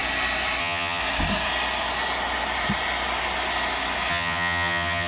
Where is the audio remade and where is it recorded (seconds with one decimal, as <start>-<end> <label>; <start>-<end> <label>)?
0.0-0.6 recorded; 0.6-1.0 remade; 1.0-4.1 recorded; 4.1-5.1 remade